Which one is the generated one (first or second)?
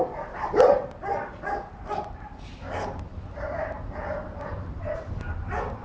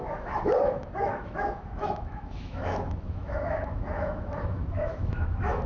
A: second